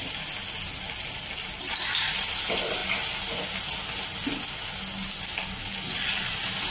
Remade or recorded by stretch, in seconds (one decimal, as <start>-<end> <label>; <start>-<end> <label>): 0.0-6.7 recorded